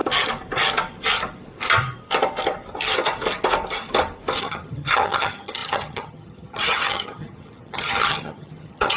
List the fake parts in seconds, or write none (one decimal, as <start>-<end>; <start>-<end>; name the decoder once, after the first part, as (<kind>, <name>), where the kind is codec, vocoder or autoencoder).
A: 4.4-9.0 (vocoder, HiFi-GAN)